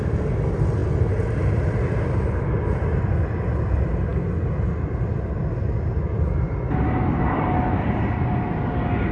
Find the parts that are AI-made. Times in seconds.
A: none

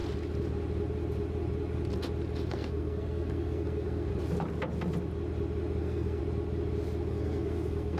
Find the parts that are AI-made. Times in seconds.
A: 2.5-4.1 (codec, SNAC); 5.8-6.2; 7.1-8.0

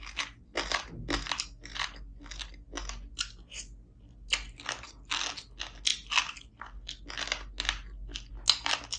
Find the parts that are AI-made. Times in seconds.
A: none

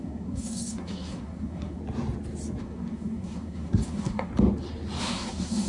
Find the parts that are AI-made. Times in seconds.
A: 0.0-1.8 (codec, SNAC); 2.6-4.3; 5.0-5.7